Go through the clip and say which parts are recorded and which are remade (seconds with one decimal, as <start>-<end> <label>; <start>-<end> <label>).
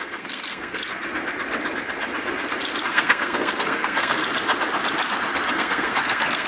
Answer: 0.0-0.8 remade; 0.8-2.8 recorded; 2.8-4.2 remade; 4.2-5.5 recorded; 5.5-6.5 remade